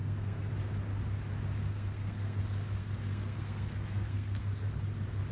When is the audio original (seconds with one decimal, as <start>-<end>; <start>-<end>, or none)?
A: 0.5-1.6; 2.4-2.8; 4.7-5.3

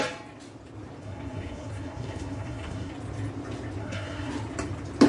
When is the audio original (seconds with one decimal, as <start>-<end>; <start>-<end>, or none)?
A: 0.0-1.0; 2.9-3.8; 4.3-5.1

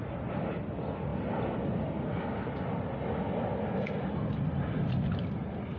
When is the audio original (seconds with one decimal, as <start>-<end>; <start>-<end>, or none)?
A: 0.0-5.8

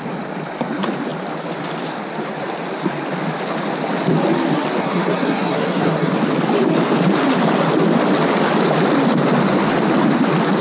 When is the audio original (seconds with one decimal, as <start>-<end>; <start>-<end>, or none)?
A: 0.0-4.8; 6.1-10.6

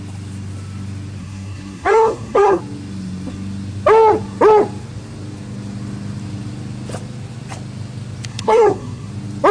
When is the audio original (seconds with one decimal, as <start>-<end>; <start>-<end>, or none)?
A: 0.0-1.2; 2.6-8.3; 9.1-9.5

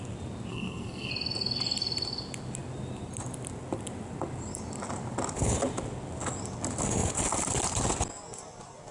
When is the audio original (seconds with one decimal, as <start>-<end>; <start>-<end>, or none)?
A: 0.0-0.5; 1.1-8.9

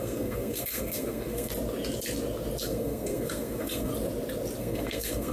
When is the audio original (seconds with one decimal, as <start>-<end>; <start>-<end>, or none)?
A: 1.5-2.6; 3.9-4.6